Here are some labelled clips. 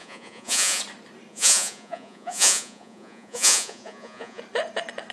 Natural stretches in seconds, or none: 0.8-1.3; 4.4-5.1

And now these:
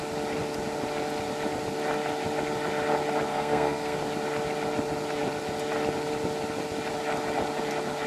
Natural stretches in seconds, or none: 0.0-3.3; 4.0-8.1

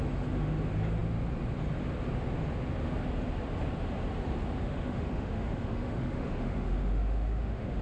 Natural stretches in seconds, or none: 0.0-4.6

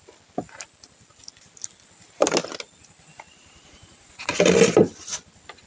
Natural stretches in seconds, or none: 0.0-3.4; 4.4-5.7